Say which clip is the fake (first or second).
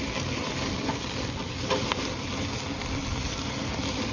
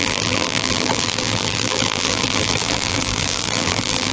second